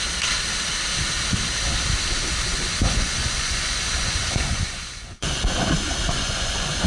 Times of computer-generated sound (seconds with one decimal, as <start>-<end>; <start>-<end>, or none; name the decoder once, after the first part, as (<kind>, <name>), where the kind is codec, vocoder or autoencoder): 2.5-6.9 (vocoder, Vocos)